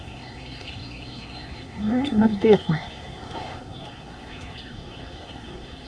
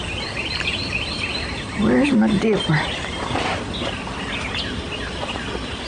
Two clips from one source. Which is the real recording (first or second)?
second